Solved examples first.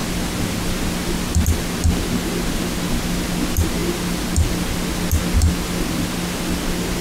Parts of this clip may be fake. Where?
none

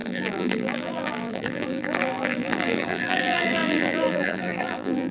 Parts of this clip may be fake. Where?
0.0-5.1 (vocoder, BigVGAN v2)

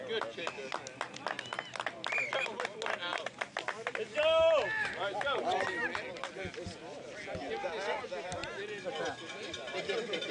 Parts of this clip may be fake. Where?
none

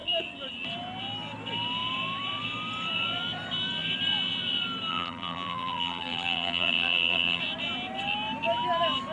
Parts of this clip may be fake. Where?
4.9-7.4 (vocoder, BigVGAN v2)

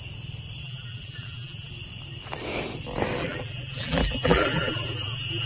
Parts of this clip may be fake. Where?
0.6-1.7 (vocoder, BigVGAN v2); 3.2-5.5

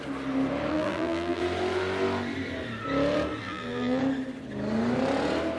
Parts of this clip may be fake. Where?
0.7-1.4 (vocoder, BigVGAN v2); 3.4-4.0

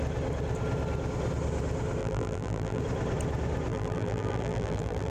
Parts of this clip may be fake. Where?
2.0-2.8 (vocoder, BigVGAN v2); 3.7-5.1